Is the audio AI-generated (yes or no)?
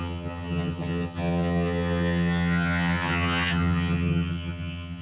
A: yes